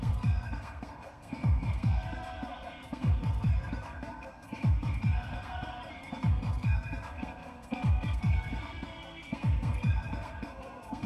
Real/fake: fake